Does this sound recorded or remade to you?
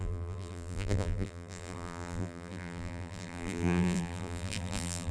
remade